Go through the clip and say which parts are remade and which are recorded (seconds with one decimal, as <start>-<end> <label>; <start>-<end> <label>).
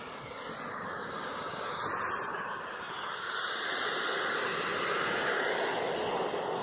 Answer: 0.0-0.7 recorded; 0.7-1.8 remade; 1.8-2.3 recorded; 2.3-3.3 remade; 3.3-6.6 recorded